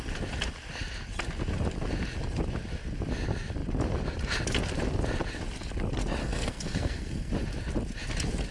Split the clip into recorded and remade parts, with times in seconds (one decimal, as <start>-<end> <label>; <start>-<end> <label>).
0.0-6.2 recorded; 6.2-7.3 remade; 7.3-8.5 recorded